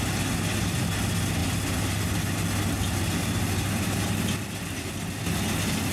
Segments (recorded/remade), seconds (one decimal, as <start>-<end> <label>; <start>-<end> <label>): 0.0-1.4 recorded; 1.4-4.9 remade; 4.9-5.9 recorded